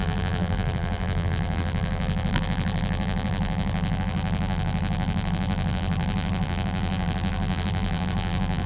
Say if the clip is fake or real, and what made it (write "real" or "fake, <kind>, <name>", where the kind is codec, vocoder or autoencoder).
fake, vocoder, BigVGAN v2